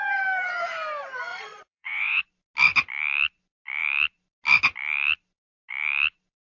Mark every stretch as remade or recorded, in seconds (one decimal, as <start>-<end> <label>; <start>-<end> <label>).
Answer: 0.0-1.3 recorded; 1.3-2.2 remade; 2.2-6.5 recorded